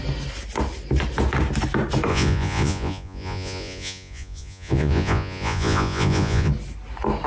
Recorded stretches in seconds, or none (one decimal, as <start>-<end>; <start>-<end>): 0.0-2.1; 6.5-7.3